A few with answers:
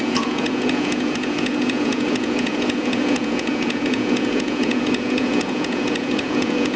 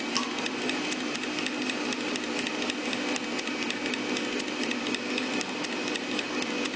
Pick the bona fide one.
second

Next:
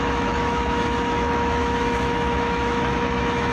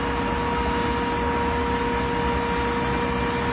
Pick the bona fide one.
second